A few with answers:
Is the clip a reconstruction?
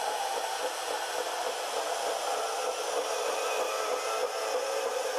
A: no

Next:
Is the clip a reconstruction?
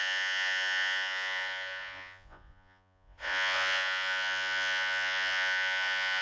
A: yes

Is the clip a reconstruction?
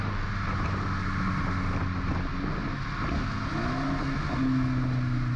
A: no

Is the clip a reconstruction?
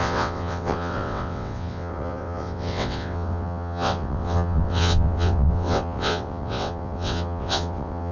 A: yes